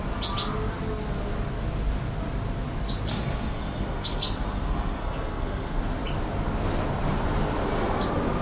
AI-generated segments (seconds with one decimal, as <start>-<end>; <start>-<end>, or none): 3.1-5.8